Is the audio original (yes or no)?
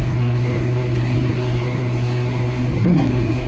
no